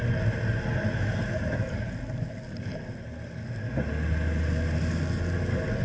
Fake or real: real